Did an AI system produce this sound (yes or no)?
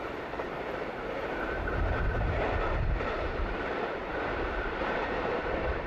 yes